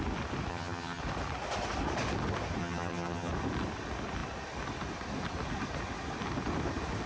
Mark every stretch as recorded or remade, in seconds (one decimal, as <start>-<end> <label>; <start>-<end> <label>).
0.0-0.5 recorded; 0.5-1.0 remade; 1.0-2.6 recorded; 2.6-3.3 remade; 3.3-7.1 recorded